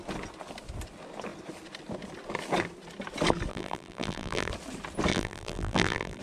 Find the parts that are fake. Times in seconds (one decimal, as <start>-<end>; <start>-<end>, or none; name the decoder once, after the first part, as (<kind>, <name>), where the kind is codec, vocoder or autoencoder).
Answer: 3.5-4.5 (vocoder, BigVGAN v2); 5.1-6.2